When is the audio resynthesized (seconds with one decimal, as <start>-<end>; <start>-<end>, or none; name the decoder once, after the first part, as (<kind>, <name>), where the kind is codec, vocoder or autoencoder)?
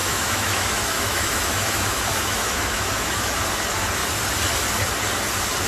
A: 0.0-3.4 (autoencoder, DAC-VAE)